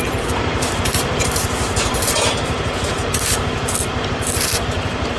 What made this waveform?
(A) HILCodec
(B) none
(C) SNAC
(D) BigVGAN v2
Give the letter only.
D